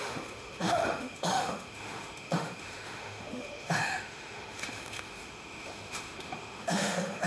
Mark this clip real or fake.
fake